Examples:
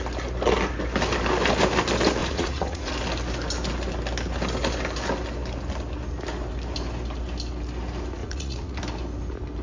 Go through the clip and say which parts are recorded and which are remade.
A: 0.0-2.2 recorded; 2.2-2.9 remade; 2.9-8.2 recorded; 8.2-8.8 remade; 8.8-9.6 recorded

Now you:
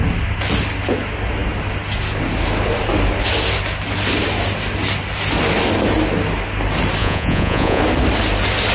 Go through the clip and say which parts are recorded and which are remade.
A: 0.0-7.0 recorded; 7.0-7.8 remade; 7.8-8.7 recorded

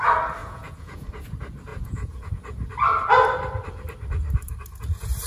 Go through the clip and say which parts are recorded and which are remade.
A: 0.0-0.4 recorded; 0.4-1.1 remade; 1.1-1.7 recorded; 1.7-2.3 remade; 2.3-5.3 recorded

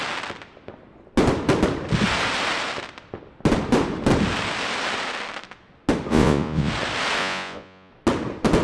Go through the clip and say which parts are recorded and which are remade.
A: 0.0-6.1 recorded; 6.1-6.7 remade; 6.7-7.2 recorded; 7.2-7.9 remade; 7.9-8.6 recorded

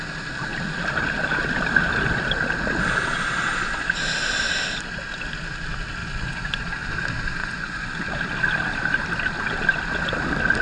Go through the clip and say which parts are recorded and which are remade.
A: 0.0-6.0 recorded; 6.0-6.6 remade; 6.6-7.4 recorded; 7.4-7.9 remade; 7.9-10.6 recorded

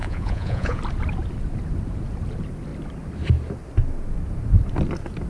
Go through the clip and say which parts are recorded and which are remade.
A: 0.0-0.8 remade; 0.8-5.3 recorded

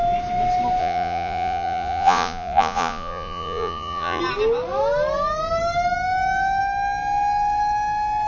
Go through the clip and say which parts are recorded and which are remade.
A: 0.0-0.8 recorded; 0.8-4.2 remade; 4.2-8.3 recorded

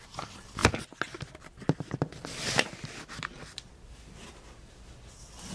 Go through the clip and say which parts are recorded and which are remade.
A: 0.0-5.5 recorded